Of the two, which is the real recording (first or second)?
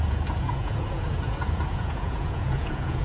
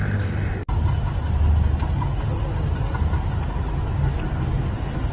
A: second